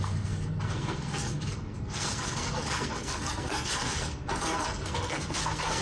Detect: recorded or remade remade